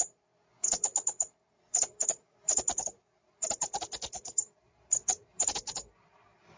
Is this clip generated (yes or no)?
no